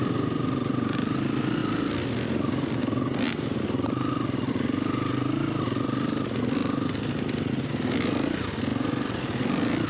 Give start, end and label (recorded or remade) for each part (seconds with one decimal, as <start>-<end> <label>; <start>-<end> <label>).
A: 0.0-8.7 recorded; 8.7-9.9 remade